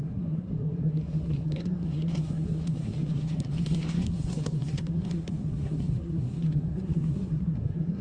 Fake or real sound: fake